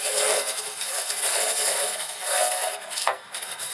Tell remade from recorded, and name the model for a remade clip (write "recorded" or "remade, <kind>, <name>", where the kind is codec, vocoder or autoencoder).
remade, codec, SNAC